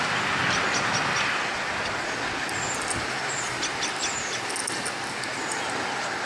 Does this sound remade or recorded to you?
recorded